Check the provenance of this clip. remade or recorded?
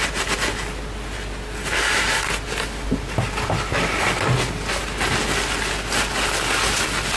recorded